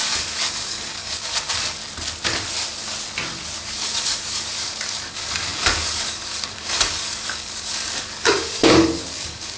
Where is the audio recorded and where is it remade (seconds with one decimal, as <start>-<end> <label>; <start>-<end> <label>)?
0.0-1.8 remade; 1.8-3.6 recorded; 3.6-9.6 remade